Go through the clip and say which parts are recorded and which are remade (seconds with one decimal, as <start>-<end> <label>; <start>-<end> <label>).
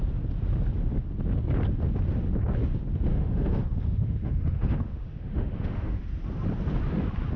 0.0-3.1 recorded; 3.1-6.0 remade; 6.0-7.4 recorded